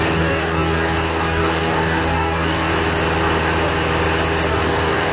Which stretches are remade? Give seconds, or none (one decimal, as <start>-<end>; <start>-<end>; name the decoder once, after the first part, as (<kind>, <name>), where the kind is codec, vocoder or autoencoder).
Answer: 0.0-2.7 (codec, DAC); 4.5-5.1

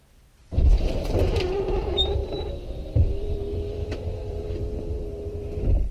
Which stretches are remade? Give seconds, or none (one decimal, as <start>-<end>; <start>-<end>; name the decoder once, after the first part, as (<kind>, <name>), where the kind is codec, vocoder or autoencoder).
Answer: 0.8-5.9 (vocoder, BigVGAN v2)

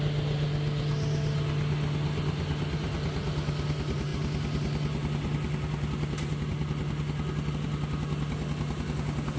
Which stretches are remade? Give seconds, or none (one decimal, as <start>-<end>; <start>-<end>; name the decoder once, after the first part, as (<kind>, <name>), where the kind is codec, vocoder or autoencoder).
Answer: none

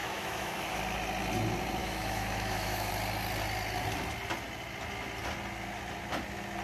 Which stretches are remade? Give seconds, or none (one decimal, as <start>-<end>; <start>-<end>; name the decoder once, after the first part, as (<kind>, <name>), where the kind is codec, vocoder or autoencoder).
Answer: 0.0-0.8 (autoencoder, DAC-VAE); 1.8-2.9

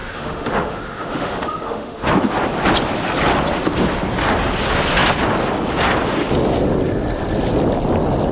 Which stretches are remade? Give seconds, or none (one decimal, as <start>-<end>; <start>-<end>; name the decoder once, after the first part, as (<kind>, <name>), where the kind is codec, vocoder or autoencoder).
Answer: 0.0-2.1 (autoencoder, DAC-VAE)

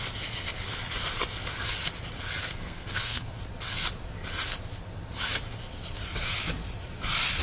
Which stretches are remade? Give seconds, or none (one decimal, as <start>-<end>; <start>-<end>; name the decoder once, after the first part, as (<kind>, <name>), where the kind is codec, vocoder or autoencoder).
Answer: 2.4-3.4 (codec, SNAC)